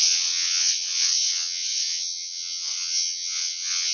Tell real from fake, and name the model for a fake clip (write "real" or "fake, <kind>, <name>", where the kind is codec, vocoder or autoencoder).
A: fake, vocoder, WaveNeXt